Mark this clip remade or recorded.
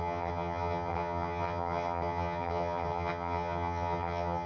remade